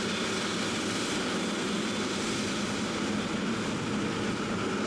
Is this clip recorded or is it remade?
recorded